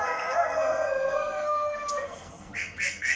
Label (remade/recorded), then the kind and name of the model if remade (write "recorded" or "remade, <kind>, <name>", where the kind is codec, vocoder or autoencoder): remade, codec, SNAC